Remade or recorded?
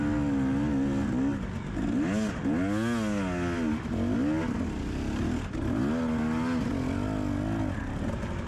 recorded